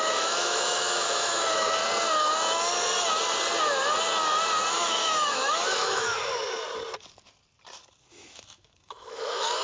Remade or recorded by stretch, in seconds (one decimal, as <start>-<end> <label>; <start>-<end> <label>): 0.0-1.8 remade; 1.8-4.7 recorded; 4.7-6.3 remade; 6.3-8.1 recorded; 8.1-9.6 remade